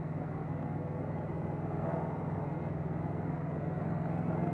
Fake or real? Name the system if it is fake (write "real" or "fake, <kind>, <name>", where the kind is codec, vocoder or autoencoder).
fake, codec, SNAC